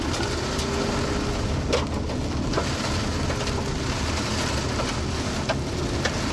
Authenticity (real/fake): real